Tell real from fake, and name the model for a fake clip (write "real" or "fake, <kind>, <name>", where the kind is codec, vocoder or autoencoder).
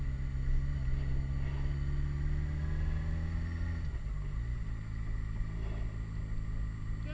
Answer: real